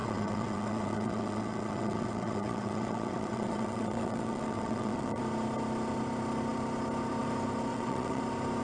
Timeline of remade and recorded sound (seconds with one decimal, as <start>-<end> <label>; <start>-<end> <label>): 0.0-5.2 remade; 5.2-7.7 recorded; 7.7-8.2 remade; 8.2-8.6 recorded